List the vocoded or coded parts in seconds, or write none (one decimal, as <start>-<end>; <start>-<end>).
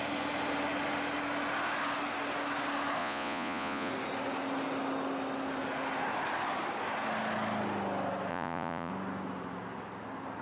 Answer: 3.0-3.9; 8.3-8.9